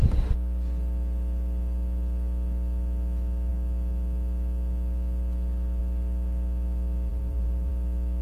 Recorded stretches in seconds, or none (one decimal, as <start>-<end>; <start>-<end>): 0.0-7.1; 7.7-8.2